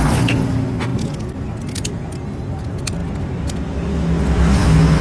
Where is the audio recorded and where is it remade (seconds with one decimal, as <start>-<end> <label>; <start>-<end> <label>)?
0.0-5.0 recorded